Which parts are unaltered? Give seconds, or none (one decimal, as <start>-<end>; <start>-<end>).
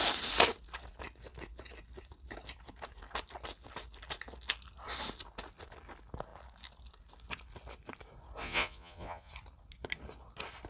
0.0-8.4; 9.3-10.7